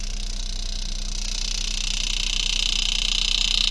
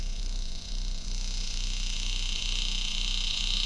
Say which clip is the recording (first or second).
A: first